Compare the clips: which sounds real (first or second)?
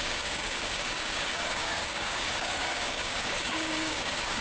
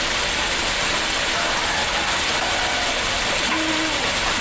second